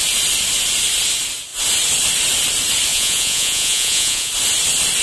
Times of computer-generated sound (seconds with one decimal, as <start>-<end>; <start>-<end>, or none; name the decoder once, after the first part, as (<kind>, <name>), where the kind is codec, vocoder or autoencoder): 2.9-4.3 (vocoder, Vocos)

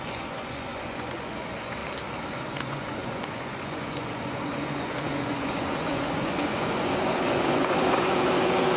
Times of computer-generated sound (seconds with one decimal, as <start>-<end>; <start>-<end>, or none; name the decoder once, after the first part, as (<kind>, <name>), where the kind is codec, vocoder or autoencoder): 0.0-1.8 (vocoder, Vocos); 2.3-8.8